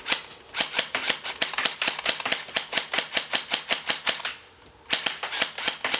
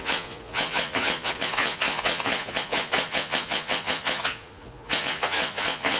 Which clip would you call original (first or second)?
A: first